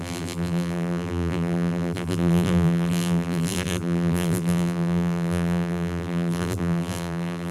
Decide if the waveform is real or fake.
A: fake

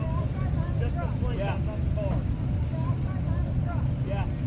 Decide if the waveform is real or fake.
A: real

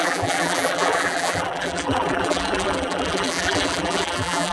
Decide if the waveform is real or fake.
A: fake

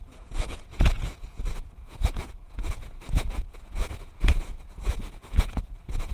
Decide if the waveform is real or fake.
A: fake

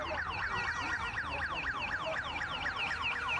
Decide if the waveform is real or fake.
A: real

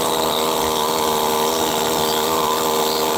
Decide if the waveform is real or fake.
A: real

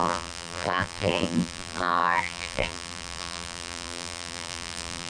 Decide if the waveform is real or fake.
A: fake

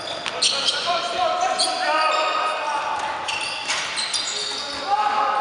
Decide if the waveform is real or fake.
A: real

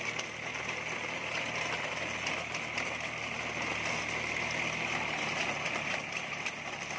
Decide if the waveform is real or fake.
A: real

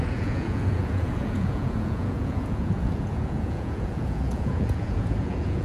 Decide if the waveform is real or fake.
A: fake